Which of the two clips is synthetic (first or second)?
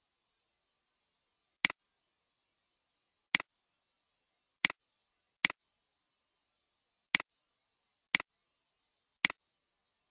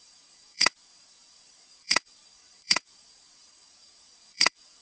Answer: second